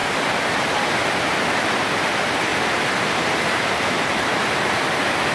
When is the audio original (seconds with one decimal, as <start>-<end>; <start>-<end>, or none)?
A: 0.0-5.3